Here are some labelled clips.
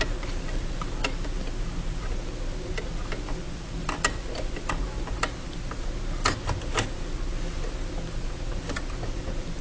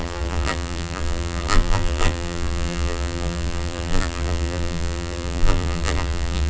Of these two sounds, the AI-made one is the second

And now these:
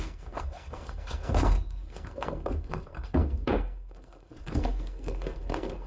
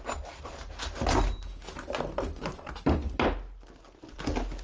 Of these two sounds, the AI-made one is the first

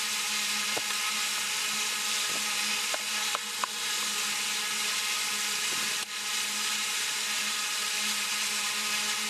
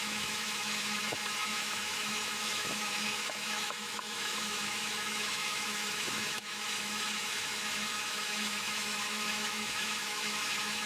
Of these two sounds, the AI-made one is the second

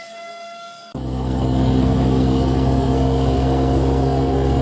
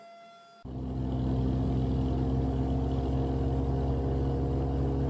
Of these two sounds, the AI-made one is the first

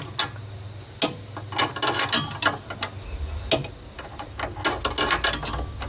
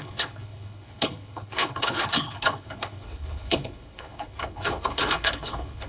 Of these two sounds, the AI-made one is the second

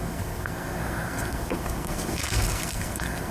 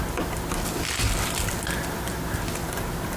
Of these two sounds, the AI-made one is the first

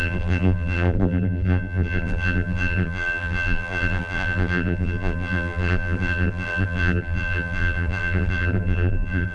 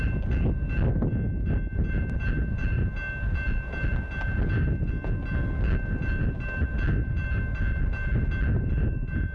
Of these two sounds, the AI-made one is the first